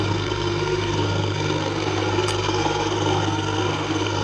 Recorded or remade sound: remade